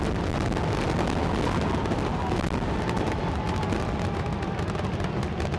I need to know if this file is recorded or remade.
recorded